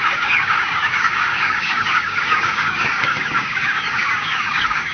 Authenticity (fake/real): fake